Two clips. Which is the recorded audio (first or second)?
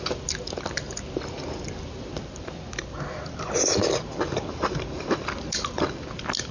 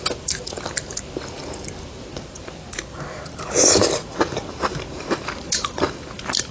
first